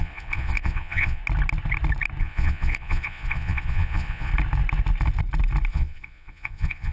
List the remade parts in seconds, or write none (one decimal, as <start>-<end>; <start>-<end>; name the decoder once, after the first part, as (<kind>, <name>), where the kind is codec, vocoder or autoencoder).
0.0-1.2 (vocoder, Vocos); 2.2-4.3; 5.7-6.9